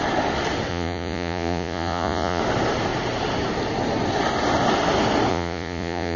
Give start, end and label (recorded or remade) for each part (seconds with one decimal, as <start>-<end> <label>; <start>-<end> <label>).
0.0-0.7 recorded; 0.7-2.4 remade; 2.4-5.3 recorded; 5.3-6.2 remade